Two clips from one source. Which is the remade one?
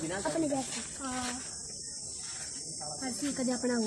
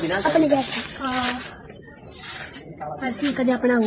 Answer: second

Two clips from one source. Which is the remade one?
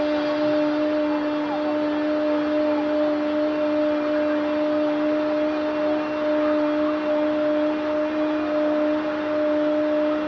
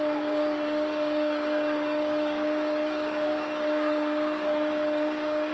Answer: second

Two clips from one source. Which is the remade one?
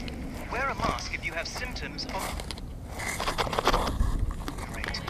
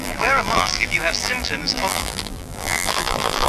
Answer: second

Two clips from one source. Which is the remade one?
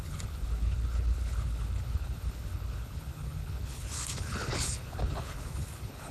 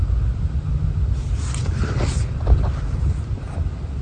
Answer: first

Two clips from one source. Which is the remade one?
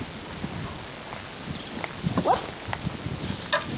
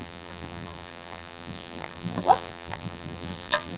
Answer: second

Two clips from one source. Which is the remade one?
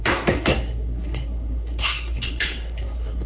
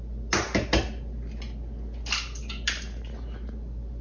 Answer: first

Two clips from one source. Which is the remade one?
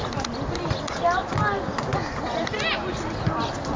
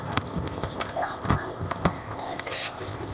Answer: second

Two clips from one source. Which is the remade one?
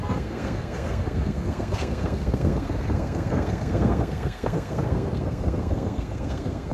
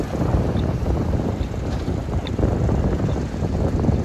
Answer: first